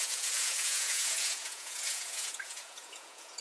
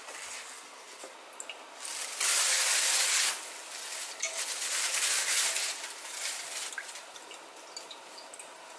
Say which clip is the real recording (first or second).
second